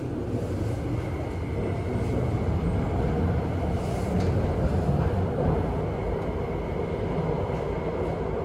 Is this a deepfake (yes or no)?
no